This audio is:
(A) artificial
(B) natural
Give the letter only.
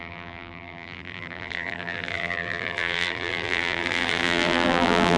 A